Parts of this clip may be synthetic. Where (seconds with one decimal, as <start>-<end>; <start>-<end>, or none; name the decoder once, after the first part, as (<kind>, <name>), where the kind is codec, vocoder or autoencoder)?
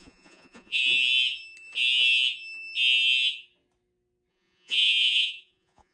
0.0-0.8 (vocoder, Vocos); 4.3-5.9